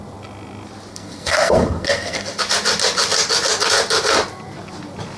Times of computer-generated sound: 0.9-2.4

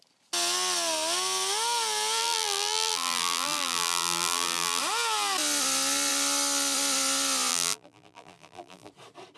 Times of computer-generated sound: 2.2-4.8; 7.5-8.9

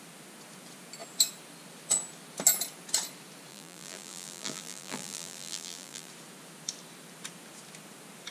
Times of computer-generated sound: 3.5-6.1

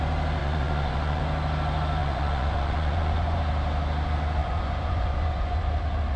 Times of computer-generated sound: 0.4-1.2; 2.0-3.4; 4.4-5.6

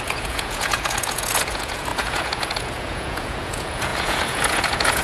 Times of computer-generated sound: 0.0-5.0

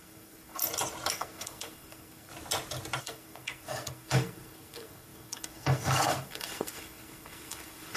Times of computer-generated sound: 0.0-0.6; 1.1-2.3; 3.0-8.0

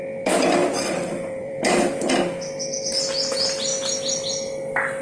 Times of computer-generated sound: 0.6-2.1